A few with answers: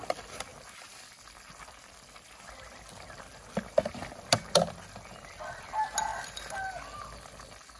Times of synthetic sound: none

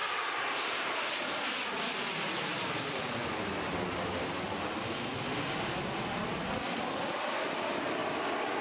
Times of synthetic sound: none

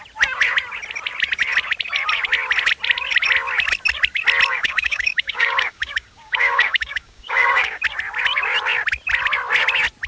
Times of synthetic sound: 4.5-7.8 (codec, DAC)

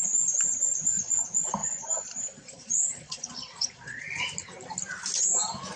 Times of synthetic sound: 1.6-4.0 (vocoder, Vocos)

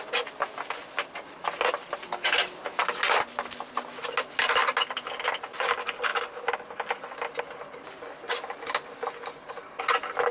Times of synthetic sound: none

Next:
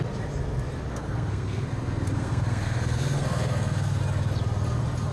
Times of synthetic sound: 0.9-4.0 (codec, SNAC)

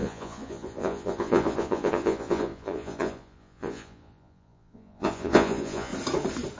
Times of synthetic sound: 0.0-5.9 (vocoder, Vocos)

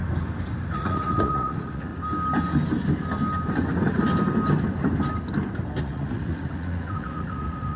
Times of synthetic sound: 0.7-1.9 (vocoder, Vocos); 5.8-7.8